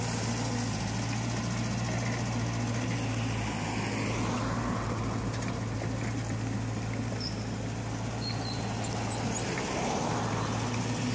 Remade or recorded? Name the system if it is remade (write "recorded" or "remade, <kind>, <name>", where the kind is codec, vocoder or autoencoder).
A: recorded